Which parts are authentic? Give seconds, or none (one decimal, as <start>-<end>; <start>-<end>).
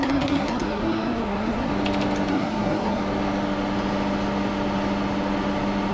1.7-2.3; 3.0-5.9